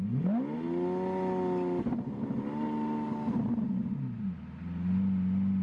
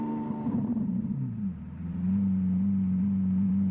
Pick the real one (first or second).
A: first